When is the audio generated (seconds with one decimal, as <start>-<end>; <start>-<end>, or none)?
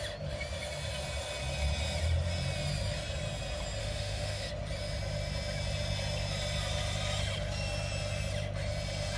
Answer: 3.8-4.5